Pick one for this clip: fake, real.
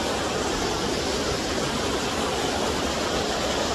real